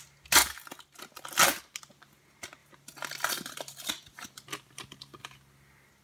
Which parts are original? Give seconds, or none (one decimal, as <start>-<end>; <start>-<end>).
0.0-2.6; 5.4-6.0